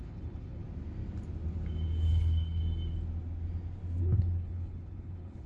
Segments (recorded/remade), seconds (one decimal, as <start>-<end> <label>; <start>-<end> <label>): 0.0-0.6 remade; 0.6-2.1 recorded; 2.1-2.6 remade; 2.6-4.0 recorded; 4.0-5.5 remade